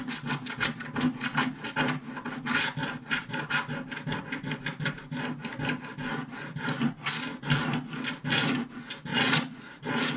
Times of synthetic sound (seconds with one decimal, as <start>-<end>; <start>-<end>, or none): 9.1-9.6